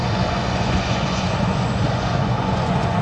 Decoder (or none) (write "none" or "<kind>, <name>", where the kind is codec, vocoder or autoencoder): vocoder, Vocos